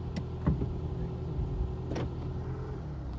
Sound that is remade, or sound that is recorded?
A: recorded